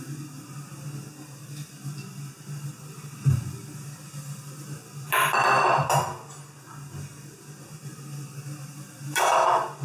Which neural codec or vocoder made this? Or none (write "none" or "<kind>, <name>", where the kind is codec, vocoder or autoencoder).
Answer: none